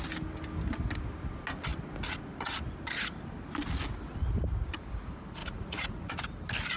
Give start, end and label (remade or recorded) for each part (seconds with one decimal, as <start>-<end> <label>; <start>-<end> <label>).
0.0-5.4 recorded; 5.4-6.1 remade; 6.1-6.8 recorded